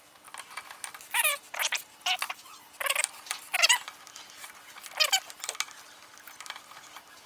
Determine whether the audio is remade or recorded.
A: recorded